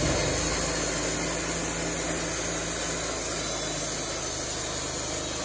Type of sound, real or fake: real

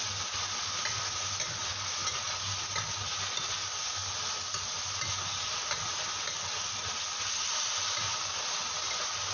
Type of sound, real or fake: real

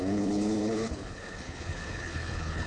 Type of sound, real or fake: fake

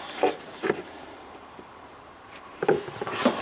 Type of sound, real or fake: fake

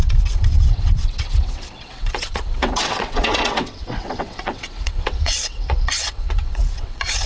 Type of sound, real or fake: fake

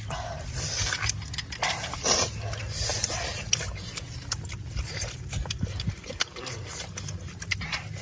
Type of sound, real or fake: real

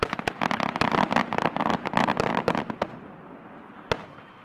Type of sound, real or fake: real